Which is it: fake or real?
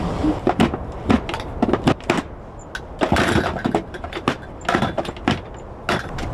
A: real